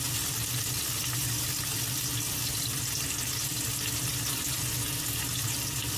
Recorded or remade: recorded